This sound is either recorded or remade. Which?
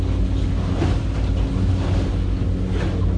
recorded